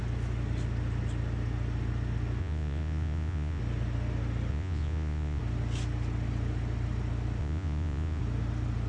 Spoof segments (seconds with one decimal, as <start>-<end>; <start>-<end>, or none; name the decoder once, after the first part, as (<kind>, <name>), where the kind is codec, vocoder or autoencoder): 2.4-3.6 (vocoder, Vocos); 4.5-5.4; 7.4-8.2